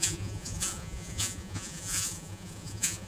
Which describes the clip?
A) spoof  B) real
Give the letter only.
A